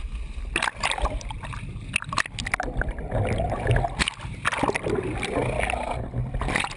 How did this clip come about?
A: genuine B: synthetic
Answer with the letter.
A